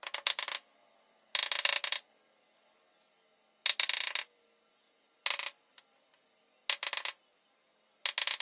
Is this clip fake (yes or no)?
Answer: no